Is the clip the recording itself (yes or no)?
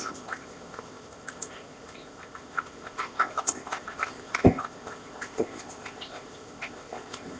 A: no